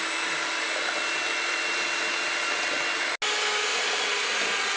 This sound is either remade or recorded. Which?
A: recorded